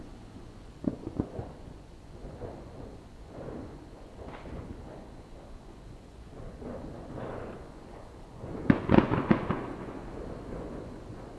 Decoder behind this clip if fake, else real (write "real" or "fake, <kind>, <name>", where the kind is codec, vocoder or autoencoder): fake, vocoder, Vocos